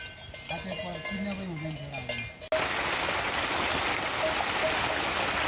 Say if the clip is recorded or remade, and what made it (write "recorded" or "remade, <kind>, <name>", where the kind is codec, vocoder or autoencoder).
recorded